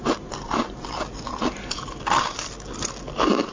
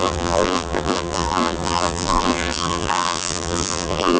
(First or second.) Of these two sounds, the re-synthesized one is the second